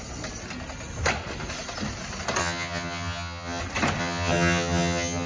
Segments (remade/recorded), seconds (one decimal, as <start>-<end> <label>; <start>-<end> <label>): 0.0-2.4 recorded; 2.4-3.6 remade; 3.6-4.0 recorded; 4.0-5.3 remade